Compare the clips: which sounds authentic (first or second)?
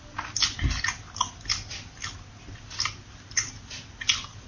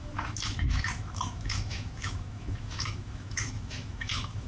first